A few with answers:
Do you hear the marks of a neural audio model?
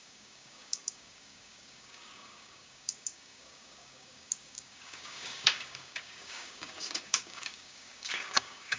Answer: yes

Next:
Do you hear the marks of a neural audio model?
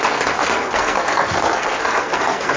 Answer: yes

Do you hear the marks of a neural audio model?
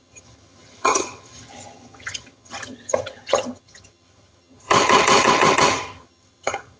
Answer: yes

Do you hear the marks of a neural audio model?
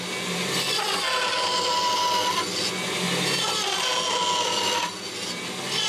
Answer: no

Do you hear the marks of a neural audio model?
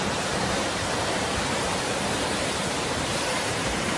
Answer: yes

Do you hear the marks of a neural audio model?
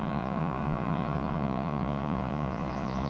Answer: yes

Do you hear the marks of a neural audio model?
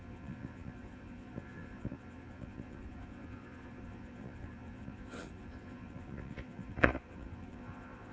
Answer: yes